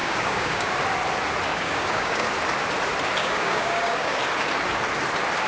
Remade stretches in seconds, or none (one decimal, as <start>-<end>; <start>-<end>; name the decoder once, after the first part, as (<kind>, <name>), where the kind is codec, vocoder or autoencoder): 0.0-0.7 (codec, DAC); 1.5-2.3; 3.2-4.2

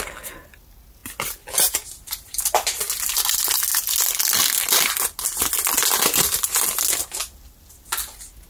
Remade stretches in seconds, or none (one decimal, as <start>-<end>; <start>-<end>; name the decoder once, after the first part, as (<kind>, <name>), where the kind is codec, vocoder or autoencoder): none

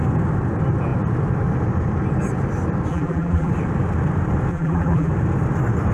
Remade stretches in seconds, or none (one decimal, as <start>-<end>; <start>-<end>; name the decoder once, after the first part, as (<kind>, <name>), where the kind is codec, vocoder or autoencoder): 2.9-3.5 (vocoder, BigVGAN v2); 4.5-5.1